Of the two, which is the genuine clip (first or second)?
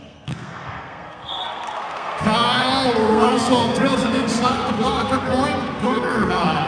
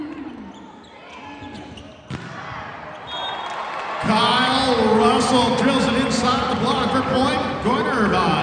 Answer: second